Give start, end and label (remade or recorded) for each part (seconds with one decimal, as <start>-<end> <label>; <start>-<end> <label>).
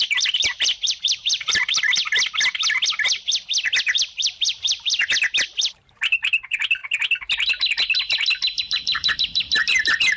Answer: 0.0-2.0 remade; 2.0-3.8 recorded; 3.8-5.0 remade; 5.0-5.6 recorded; 5.6-6.8 remade; 6.8-8.6 recorded; 8.6-10.2 remade